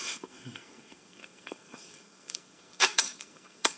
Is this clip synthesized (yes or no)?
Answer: yes